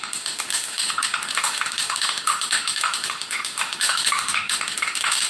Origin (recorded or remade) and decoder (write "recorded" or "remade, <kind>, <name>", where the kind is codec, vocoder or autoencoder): remade, autoencoder, DAC-VAE